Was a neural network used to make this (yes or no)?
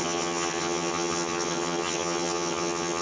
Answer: yes